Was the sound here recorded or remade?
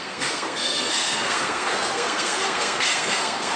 remade